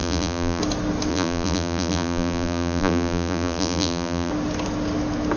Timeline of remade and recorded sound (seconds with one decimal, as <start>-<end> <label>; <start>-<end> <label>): 0.0-0.6 remade; 0.6-1.1 recorded; 1.1-4.3 remade; 4.3-5.4 recorded